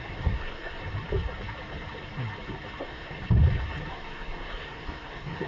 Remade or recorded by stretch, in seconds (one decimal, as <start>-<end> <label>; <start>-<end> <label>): 0.0-0.8 remade; 0.8-2.8 recorded; 2.8-3.2 remade; 3.2-3.9 recorded; 3.9-5.5 remade